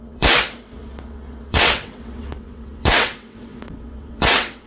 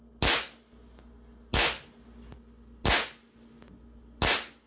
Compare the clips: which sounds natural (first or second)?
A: second